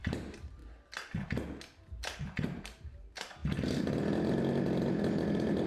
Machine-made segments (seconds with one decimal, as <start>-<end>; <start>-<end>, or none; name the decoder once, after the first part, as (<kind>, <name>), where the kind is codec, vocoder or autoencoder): 0.0-0.6 (vocoder, BigVGAN v2); 1.8-3.4; 5.3-5.7